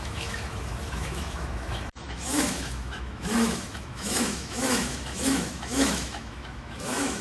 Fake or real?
fake